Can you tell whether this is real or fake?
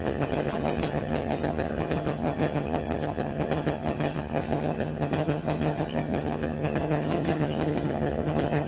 fake